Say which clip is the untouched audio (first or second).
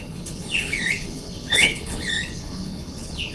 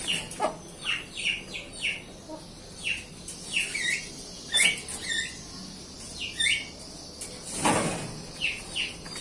second